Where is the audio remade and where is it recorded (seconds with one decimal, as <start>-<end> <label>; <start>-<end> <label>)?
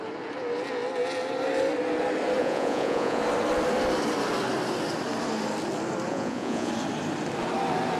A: 0.0-2.4 recorded; 2.4-3.2 remade; 3.2-6.1 recorded; 6.1-6.7 remade; 6.7-8.0 recorded